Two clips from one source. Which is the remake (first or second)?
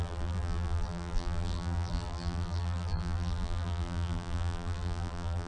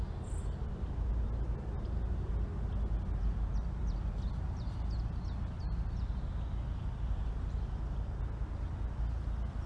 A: first